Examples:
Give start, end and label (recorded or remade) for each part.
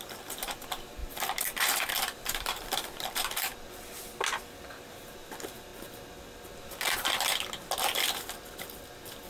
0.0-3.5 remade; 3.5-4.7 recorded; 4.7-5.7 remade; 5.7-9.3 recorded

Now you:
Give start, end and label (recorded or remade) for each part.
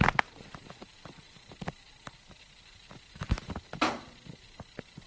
0.0-5.1 recorded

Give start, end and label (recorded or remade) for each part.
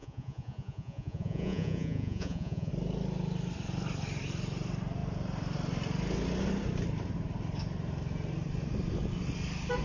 0.0-2.7 remade; 2.7-9.8 recorded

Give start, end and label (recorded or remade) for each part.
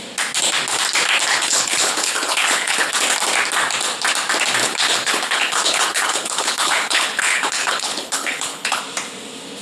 0.0-1.3 recorded; 1.3-2.9 remade; 2.9-4.6 recorded; 4.6-8.8 remade; 8.8-9.6 recorded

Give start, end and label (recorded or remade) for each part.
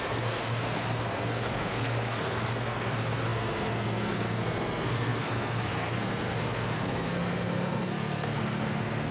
0.0-9.1 remade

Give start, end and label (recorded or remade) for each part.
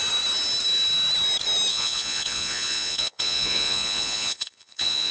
0.0-1.7 recorded; 1.7-5.1 remade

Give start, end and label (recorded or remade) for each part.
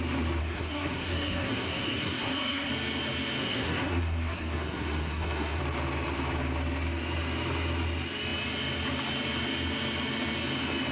0.0-0.4 recorded; 0.4-2.7 remade; 2.7-3.4 recorded; 3.4-5.6 remade; 5.6-10.9 recorded